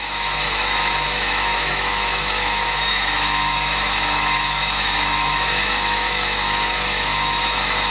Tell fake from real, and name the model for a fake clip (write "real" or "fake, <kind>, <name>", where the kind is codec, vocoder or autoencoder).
fake, autoencoder, DAC-VAE